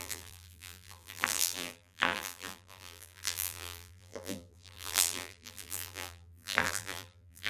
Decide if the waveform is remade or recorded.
remade